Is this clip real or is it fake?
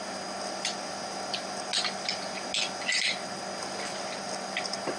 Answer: real